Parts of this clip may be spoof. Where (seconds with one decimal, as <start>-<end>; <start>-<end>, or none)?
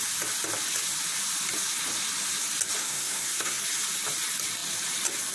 2.8-3.6